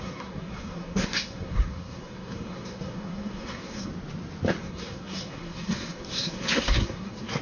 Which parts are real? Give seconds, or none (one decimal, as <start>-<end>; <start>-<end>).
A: 3.9-4.6

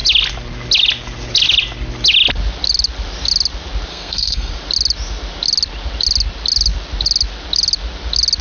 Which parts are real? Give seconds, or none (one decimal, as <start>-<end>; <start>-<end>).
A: 0.0-3.9; 4.5-8.4

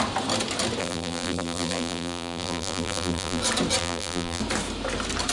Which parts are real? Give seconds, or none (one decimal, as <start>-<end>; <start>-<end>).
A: 0.0-0.8; 3.4-3.8; 4.4-5.3

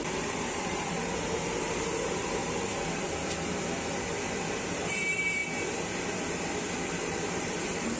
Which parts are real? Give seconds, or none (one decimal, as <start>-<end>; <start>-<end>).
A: 2.4-4.6; 5.4-8.0

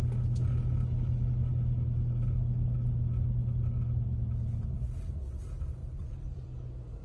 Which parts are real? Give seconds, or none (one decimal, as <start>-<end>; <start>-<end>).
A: 0.0-5.8